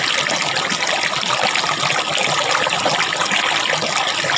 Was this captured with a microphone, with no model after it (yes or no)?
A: yes